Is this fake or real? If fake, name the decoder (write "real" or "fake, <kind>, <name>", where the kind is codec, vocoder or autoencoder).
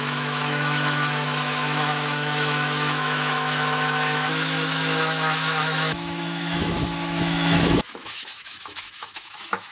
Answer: fake, autoencoder, DAC-VAE